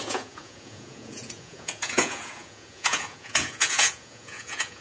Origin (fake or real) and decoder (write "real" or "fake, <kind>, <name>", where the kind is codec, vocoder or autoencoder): fake, vocoder, Vocos